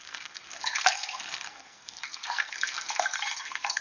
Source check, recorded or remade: remade